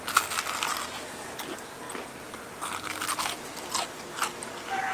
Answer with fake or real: real